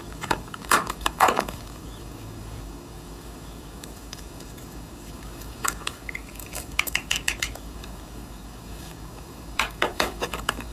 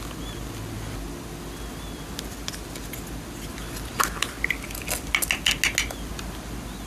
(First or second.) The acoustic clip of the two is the second